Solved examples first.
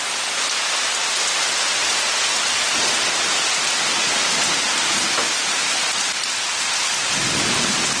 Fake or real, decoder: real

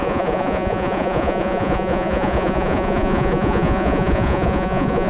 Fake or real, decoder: fake, vocoder, Vocos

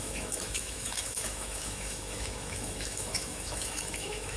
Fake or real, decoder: fake, autoencoder, DAC-VAE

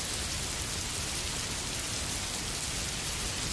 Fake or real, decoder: real